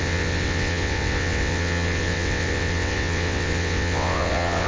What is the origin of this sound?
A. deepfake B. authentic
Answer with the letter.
A